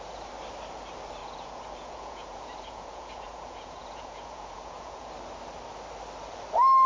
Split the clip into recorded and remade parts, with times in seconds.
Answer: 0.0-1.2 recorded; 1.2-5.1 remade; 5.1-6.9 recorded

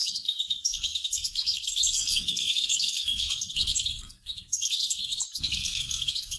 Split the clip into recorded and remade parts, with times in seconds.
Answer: 0.0-6.4 remade

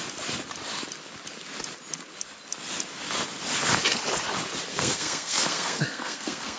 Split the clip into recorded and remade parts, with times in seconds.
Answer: 0.0-4.7 recorded; 4.7-6.6 remade